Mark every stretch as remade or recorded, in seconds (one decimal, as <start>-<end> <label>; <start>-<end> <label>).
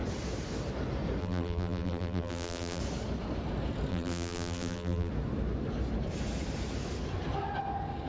0.0-1.2 recorded; 1.2-2.8 remade; 2.8-3.9 recorded; 3.9-5.1 remade; 5.1-8.1 recorded